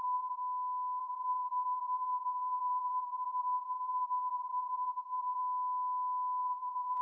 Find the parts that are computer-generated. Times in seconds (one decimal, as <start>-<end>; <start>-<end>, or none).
0.0-0.4; 1.0-5.4; 6.4-7.0